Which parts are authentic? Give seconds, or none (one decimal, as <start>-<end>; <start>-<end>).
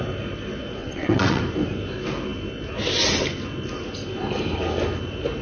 0.0-0.8; 1.4-5.4